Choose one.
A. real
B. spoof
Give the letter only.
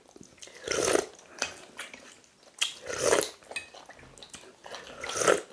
A